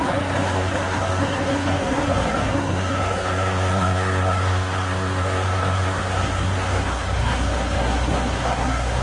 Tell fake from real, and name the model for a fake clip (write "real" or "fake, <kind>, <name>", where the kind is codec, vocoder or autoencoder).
fake, codec, SNAC